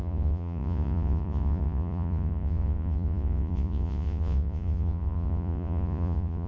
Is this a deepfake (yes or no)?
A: yes